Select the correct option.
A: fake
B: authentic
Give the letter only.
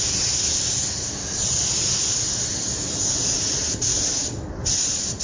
B